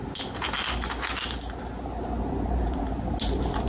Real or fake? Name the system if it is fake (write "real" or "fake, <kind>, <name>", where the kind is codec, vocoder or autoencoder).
real